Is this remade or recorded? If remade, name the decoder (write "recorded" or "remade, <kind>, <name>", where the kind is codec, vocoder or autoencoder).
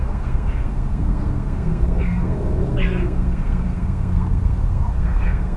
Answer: remade, codec, SNAC